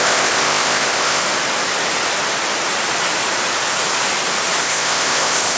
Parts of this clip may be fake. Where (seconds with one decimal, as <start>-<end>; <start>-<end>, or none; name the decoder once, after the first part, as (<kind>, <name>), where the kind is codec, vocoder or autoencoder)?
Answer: 0.0-1.2 (codec, ZipCodec); 4.6-5.6